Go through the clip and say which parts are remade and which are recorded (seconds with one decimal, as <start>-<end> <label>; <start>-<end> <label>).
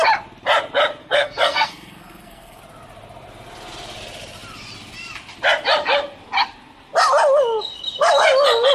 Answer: 0.0-1.0 recorded; 1.0-2.6 remade; 2.6-8.7 recorded